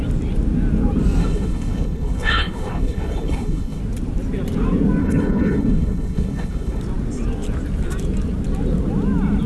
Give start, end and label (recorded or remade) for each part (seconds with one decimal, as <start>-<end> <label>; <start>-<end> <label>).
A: 0.0-1.2 recorded; 1.2-3.8 remade; 3.8-5.0 recorded; 5.0-6.8 remade; 6.8-9.5 recorded